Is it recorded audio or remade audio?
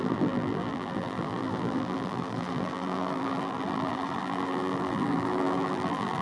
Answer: remade